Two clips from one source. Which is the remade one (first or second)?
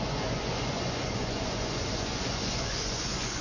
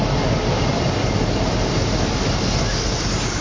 first